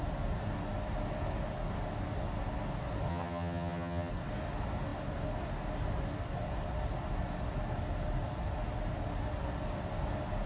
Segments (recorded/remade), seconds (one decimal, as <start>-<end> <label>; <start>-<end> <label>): 0.0-3.1 recorded; 3.1-4.1 remade; 4.1-10.5 recorded